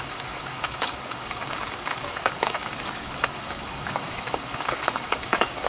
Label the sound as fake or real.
fake